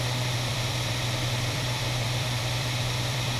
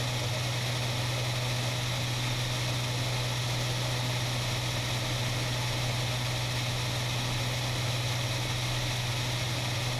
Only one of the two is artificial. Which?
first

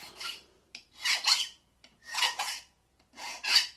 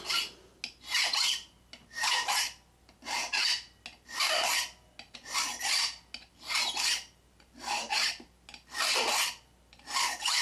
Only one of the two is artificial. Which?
first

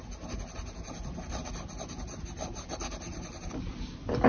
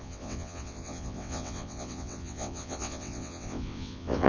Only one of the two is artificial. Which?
second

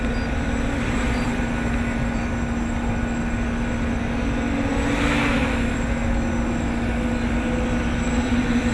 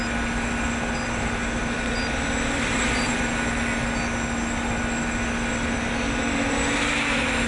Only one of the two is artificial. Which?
first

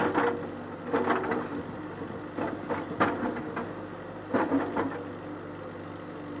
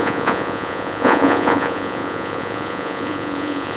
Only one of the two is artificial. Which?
second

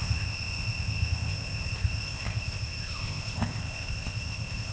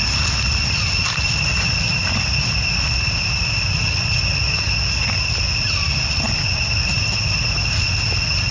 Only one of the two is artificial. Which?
first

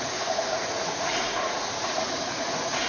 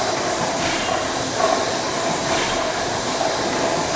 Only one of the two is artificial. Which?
first